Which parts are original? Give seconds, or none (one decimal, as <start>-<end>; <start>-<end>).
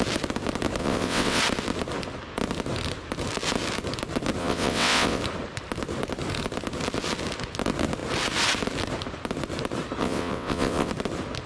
0.0-0.8; 1.4-4.4; 5.2-10.0; 10.9-11.5